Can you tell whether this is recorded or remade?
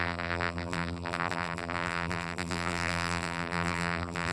remade